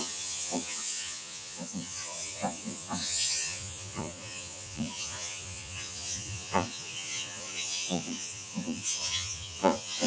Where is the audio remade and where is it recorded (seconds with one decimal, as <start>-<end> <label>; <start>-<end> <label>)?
0.0-10.1 remade

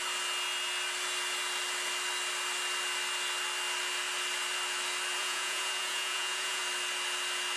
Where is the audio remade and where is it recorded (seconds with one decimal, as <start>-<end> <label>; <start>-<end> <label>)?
0.0-5.2 recorded; 5.2-6.6 remade; 6.6-7.6 recorded

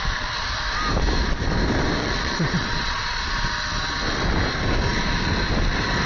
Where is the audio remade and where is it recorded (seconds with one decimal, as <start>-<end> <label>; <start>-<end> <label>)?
0.0-2.0 recorded; 2.0-3.3 remade; 3.3-6.1 recorded

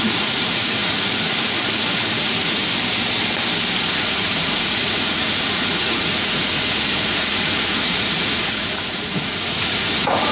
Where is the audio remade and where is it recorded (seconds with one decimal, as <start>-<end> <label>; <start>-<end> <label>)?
0.0-2.6 remade; 2.6-3.8 recorded; 3.8-10.3 remade